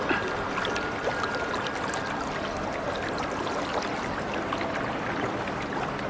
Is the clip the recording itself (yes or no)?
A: yes